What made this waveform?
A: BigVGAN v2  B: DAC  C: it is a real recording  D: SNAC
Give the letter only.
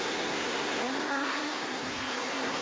D